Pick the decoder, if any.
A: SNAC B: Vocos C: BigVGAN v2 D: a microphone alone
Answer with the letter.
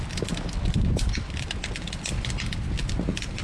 D